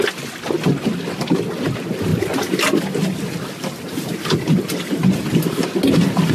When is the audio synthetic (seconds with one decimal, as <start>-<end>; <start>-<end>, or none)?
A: none